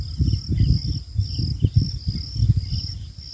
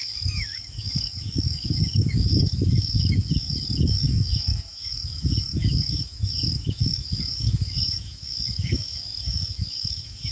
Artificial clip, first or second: second